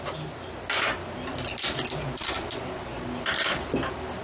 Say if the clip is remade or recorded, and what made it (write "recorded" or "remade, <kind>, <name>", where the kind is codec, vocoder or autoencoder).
recorded